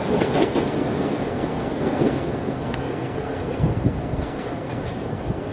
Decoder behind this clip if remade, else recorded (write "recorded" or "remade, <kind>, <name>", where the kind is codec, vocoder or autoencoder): remade, codec, SNAC